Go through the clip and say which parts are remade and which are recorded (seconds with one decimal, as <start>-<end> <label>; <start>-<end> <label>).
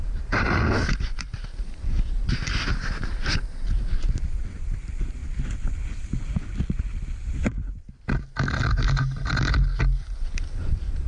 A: 0.0-5.2 remade; 5.2-10.4 recorded; 10.4-11.1 remade